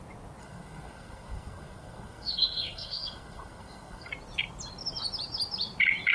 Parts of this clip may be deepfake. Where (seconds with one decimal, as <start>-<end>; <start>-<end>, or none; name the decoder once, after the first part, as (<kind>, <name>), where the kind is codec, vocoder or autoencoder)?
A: 0.4-4.1 (codec, SNAC)